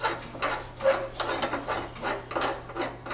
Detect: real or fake real